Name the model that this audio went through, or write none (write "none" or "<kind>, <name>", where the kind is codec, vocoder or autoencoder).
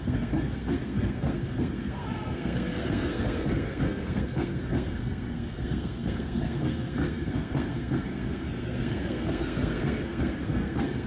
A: codec, SNAC